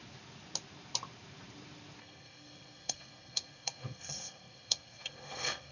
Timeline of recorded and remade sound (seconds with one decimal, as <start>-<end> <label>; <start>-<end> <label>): 0.0-2.0 recorded; 2.0-5.7 remade